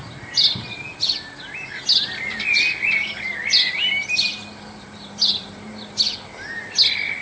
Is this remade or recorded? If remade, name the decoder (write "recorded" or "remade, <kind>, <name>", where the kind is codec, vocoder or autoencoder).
recorded